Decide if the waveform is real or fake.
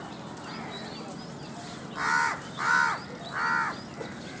real